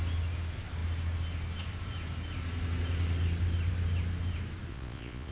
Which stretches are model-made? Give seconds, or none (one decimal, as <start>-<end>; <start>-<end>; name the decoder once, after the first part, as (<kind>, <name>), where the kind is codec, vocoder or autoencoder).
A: 4.7-5.3 (vocoder, Vocos)